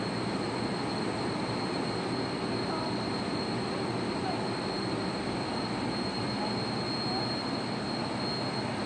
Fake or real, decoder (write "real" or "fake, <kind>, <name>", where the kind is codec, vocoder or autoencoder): real